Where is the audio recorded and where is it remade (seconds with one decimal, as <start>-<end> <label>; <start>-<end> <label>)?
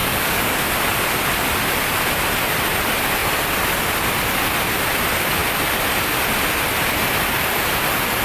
0.0-0.6 remade; 0.6-8.2 recorded